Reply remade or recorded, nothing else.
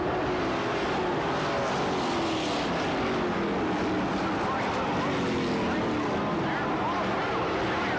recorded